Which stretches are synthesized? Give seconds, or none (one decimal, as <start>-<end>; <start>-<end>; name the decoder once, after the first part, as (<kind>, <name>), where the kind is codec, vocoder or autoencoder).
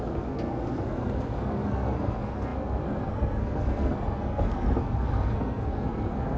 0.0-6.4 (codec, SNAC)